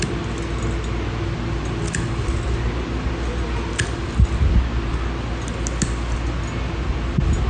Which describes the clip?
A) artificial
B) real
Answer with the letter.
B